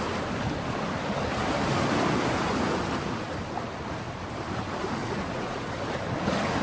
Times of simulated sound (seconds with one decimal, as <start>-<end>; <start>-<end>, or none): 5.0-5.7